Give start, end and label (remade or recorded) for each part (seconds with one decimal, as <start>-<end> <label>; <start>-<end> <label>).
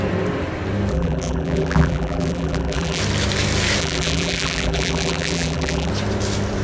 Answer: 0.0-0.9 recorded; 0.9-3.0 remade; 3.0-3.8 recorded; 3.8-5.9 remade; 5.9-6.6 recorded